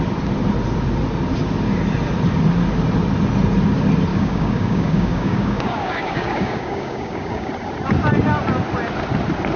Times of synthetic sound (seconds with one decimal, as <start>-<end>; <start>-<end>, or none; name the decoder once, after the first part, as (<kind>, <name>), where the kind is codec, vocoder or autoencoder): 4.1-7.5 (codec, DAC)